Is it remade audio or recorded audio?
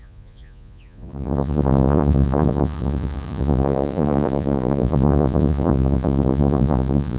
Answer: remade